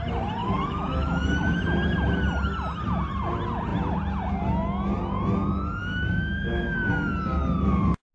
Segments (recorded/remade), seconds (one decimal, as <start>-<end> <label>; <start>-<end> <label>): 0.0-0.4 recorded; 0.4-1.6 remade; 1.6-5.8 recorded; 5.8-6.9 remade; 6.9-8.1 recorded